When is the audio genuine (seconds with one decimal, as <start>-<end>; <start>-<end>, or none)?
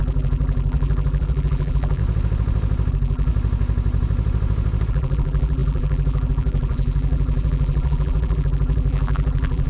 2.0-2.9; 3.3-4.9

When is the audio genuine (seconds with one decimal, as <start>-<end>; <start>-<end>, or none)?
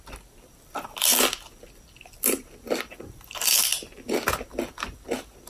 1.1-2.1